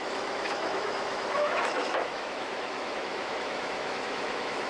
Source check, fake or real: fake